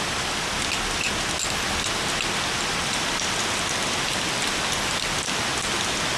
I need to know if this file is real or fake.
real